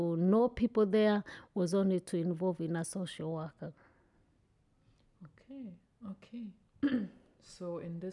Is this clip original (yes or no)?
yes